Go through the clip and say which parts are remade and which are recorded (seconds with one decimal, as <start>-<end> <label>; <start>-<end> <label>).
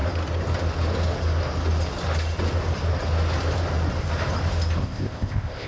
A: 0.0-4.8 recorded; 4.8-5.7 remade